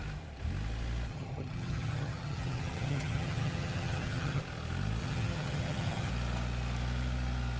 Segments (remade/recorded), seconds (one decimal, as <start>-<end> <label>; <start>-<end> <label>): 0.0-1.1 recorded; 1.1-4.4 remade; 4.4-5.0 recorded; 5.0-6.1 remade; 6.1-7.6 recorded